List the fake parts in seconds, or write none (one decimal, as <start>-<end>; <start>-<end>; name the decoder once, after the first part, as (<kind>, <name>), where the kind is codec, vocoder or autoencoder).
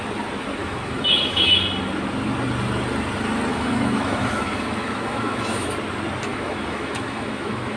0.6-1.6 (autoencoder, DAC-VAE); 3.5-5.7; 6.3-7.8